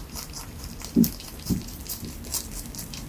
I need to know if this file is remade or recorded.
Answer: remade